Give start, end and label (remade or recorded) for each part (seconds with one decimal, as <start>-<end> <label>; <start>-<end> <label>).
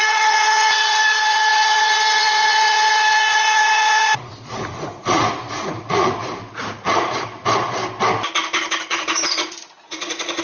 0.0-7.8 remade; 7.8-8.8 recorded; 8.8-10.4 remade